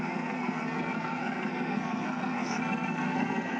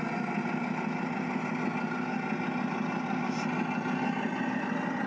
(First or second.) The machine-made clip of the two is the first